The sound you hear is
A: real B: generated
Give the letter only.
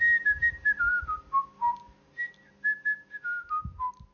A